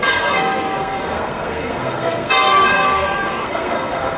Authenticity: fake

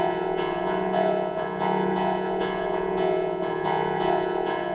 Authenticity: fake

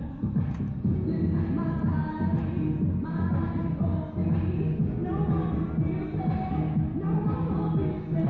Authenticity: real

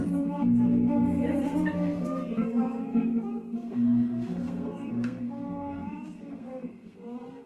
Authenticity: fake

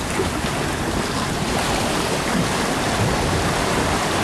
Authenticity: real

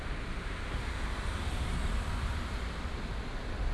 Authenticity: real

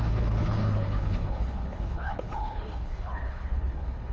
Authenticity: fake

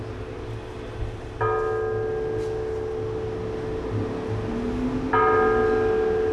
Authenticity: real